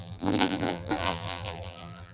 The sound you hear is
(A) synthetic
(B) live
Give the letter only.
A